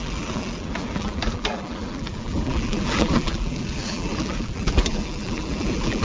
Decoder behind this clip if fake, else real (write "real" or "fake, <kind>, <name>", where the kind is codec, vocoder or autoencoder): fake, vocoder, BigVGAN v2